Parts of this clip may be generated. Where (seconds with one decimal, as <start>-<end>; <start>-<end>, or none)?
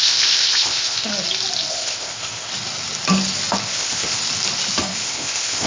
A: 0.0-1.1; 1.7-2.5; 3.6-4.2; 4.8-5.7